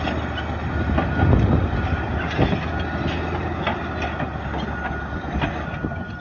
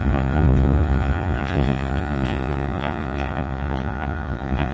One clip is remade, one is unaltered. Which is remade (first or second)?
second